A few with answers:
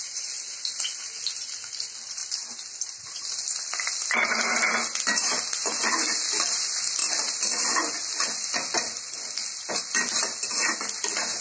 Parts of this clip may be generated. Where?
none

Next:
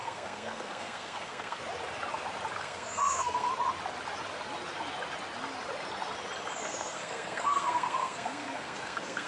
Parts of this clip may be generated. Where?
0.0-1.6; 2.6-3.5; 6.6-9.3

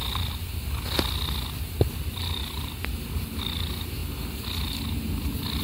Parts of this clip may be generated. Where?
none

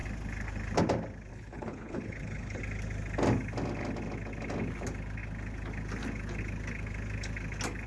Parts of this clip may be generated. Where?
1.3-2.6

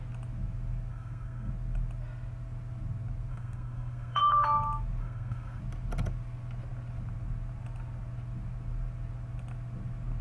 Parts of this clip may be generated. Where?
0.9-1.5; 3.3-4.2; 5.0-5.6

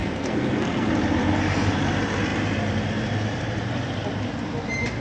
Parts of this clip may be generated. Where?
0.0-0.9

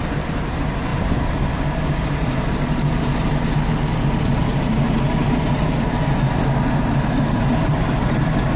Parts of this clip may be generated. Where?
none

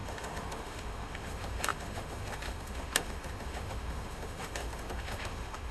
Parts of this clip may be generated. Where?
0.0-5.7